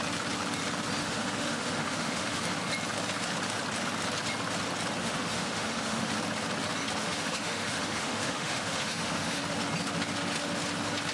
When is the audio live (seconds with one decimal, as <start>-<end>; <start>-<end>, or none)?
0.0-1.0; 2.4-5.0; 6.1-7.0; 9.4-11.1